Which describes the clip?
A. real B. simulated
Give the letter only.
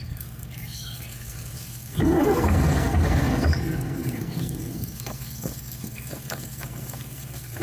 B